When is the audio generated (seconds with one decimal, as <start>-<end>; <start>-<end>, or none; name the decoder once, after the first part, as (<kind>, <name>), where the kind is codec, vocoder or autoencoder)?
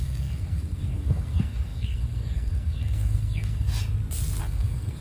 0.0-3.7 (codec, SNAC); 4.4-5.0